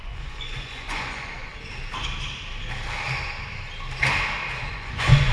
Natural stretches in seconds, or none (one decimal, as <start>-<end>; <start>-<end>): 1.5-4.7